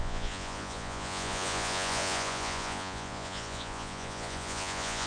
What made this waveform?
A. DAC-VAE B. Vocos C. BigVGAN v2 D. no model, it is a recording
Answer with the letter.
B